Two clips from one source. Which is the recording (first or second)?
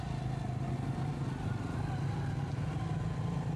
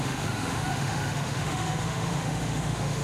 first